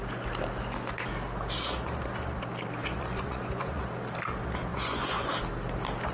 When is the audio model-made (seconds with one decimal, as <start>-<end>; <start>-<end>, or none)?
2.8-3.8; 4.7-5.3